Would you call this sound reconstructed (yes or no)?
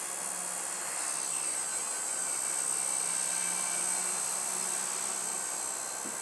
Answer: no